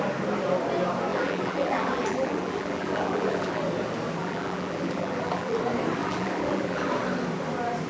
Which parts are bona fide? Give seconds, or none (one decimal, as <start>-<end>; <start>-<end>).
0.0-1.1; 3.6-4.2; 5.6-6.0; 6.9-7.9